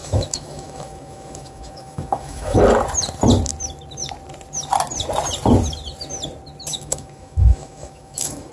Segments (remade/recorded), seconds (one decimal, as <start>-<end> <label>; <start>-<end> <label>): 0.0-2.6 remade; 2.6-6.7 recorded; 6.7-8.5 remade